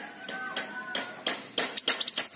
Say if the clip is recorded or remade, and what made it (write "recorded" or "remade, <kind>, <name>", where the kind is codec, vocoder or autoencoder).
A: recorded